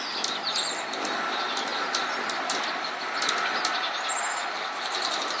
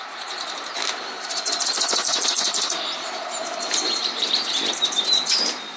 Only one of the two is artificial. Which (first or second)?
second